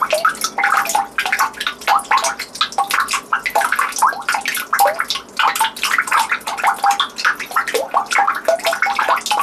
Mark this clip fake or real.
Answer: real